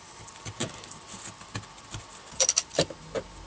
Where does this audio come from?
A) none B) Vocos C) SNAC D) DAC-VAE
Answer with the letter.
A